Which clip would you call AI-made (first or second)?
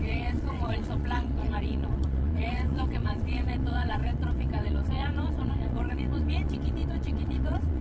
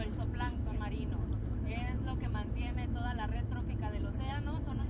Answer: first